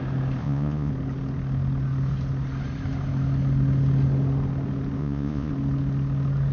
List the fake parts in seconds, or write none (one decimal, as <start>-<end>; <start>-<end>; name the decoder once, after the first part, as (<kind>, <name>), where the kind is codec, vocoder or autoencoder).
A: 0.4-0.9 (vocoder, Vocos); 5.0-5.5